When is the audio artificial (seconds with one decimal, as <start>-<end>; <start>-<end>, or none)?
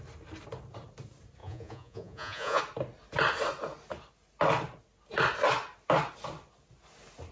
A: 1.4-2.6